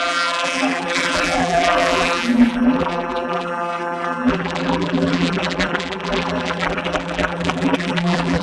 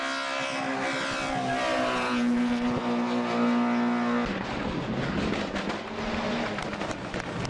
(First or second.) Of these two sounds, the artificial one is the first